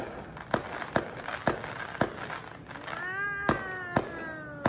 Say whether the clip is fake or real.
real